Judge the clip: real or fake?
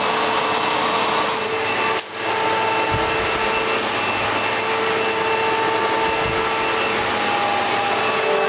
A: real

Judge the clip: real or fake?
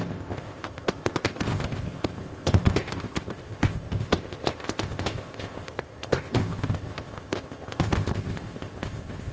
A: fake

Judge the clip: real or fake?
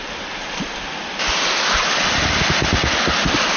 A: real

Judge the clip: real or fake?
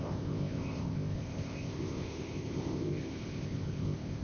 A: fake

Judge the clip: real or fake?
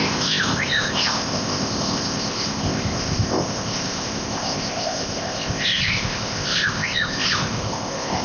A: fake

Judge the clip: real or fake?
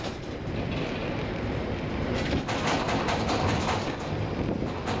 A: real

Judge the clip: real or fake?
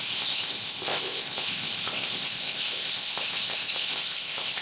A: fake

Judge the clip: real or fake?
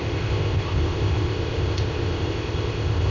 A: fake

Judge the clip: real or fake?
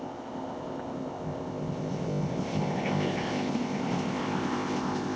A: fake